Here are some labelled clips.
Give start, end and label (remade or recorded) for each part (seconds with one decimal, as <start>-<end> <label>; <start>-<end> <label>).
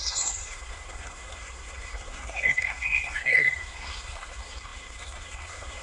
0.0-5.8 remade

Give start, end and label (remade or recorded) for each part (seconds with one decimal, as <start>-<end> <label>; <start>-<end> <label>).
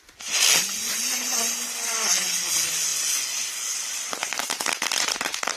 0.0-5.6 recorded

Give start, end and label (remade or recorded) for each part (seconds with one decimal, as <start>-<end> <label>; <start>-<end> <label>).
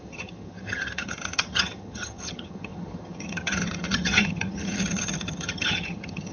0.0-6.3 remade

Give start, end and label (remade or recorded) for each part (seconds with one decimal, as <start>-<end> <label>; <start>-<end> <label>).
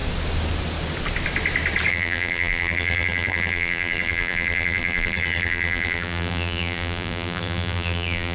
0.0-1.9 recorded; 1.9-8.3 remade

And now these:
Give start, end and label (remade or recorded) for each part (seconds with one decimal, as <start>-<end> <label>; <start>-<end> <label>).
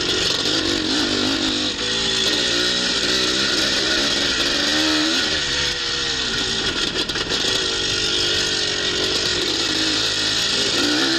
0.0-9.3 recorded; 9.3-10.5 remade; 10.5-11.2 recorded